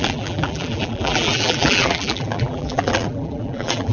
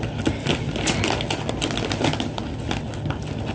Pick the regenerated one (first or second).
first